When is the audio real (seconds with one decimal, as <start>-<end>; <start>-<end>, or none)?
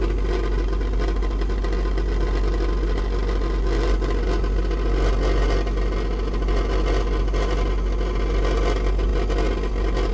0.0-10.1